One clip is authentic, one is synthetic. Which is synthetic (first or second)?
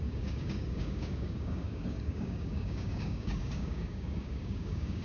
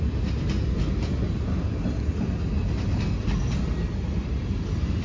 first